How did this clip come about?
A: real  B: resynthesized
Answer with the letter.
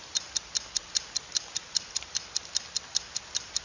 A